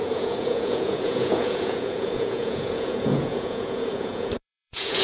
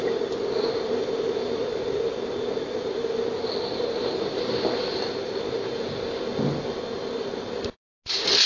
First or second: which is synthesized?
first